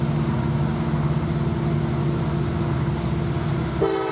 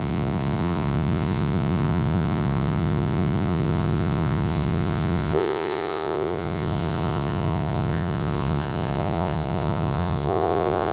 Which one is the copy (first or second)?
second